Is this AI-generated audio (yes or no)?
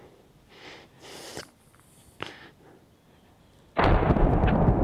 yes